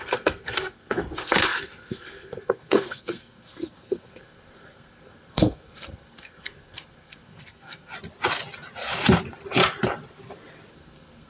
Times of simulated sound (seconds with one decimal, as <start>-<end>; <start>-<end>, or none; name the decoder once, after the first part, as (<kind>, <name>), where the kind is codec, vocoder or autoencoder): 0.0-7.9 (codec, SNAC); 10.7-11.3